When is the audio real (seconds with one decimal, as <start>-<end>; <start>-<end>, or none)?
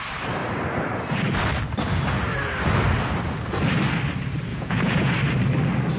0.0-4.5; 5.1-6.0